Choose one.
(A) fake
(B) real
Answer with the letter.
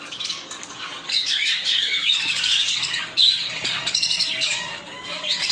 A